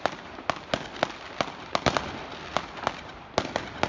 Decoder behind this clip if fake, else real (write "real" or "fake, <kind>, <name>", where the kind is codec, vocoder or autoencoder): real